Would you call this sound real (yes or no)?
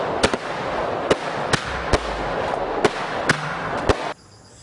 yes